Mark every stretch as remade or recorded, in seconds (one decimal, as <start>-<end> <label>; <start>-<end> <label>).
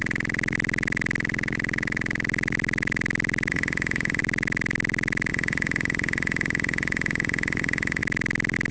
0.0-3.5 recorded; 3.5-4.2 remade; 4.2-5.3 recorded; 5.3-8.0 remade; 8.0-8.7 recorded